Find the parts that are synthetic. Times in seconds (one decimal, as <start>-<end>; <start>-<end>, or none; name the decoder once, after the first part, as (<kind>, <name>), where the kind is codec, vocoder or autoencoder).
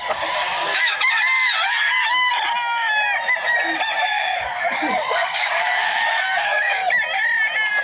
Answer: 0.0-2.3 (codec, DAC); 4.0-6.8